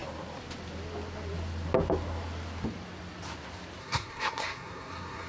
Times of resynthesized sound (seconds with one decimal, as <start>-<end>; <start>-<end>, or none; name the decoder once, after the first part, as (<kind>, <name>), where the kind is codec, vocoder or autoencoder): 3.8-5.3 (codec, SNAC)